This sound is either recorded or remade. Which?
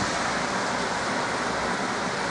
recorded